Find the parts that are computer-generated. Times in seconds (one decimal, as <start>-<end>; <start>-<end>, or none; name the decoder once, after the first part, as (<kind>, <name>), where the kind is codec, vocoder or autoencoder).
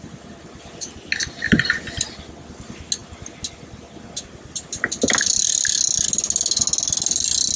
none